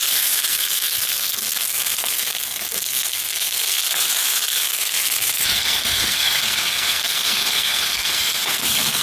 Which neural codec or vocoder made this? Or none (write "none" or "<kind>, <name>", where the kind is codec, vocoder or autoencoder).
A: codec, SNAC